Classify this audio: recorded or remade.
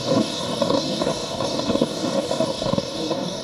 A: remade